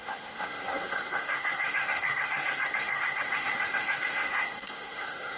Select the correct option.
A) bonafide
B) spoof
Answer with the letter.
B